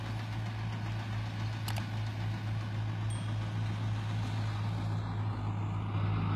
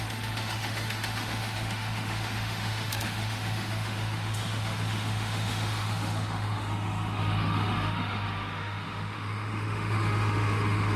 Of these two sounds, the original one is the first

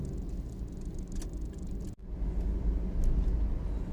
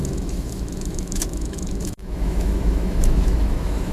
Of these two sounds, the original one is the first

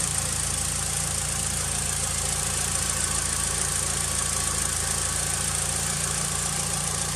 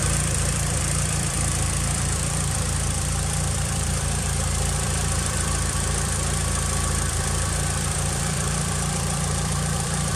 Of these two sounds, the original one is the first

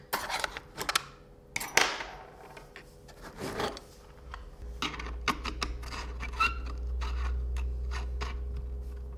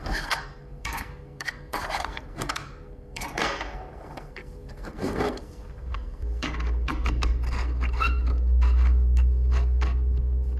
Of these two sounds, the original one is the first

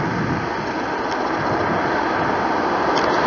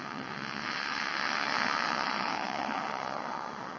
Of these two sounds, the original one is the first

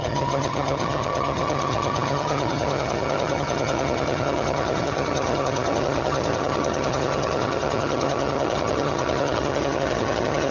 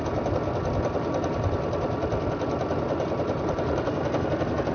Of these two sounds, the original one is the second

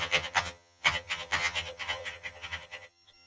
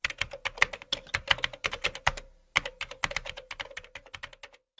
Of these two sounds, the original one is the second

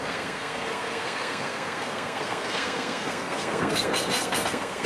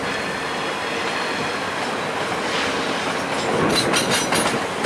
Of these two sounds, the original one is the second